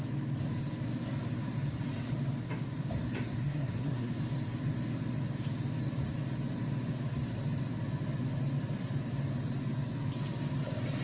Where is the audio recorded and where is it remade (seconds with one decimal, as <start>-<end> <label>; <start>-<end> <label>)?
0.0-3.4 recorded; 3.4-4.1 remade; 4.1-11.0 recorded